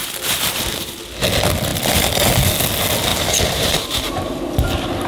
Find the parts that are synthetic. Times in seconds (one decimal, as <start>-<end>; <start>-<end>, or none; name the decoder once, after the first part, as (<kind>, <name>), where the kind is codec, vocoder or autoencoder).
0.0-1.0 (vocoder, BigVGAN v2); 3.1-4.5